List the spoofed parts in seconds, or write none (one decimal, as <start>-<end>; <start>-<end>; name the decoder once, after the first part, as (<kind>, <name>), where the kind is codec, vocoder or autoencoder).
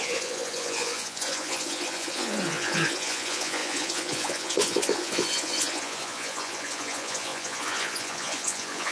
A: 0.0-8.9 (vocoder, Vocos)